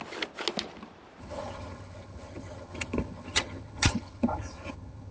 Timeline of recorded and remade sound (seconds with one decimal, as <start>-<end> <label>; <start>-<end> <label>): 0.0-1.2 recorded; 1.2-5.1 remade